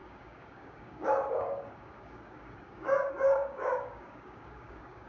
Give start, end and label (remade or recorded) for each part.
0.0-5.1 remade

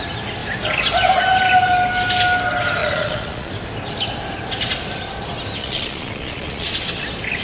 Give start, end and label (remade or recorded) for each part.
0.0-2.8 recorded; 2.8-3.5 remade; 3.5-5.6 recorded; 5.6-6.7 remade; 6.7-7.4 recorded

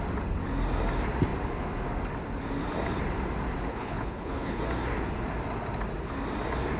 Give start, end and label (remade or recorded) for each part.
0.0-3.7 recorded; 3.7-4.6 remade; 4.6-6.8 recorded

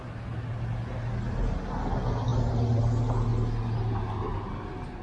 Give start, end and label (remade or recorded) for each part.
0.0-5.0 recorded

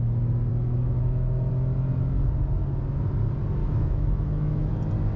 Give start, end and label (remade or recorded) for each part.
0.0-0.5 recorded; 0.5-1.5 remade; 1.5-3.6 recorded; 3.6-4.7 remade; 4.7-5.2 recorded